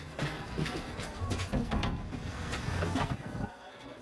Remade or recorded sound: remade